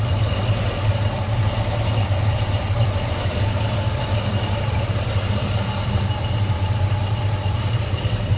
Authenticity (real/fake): fake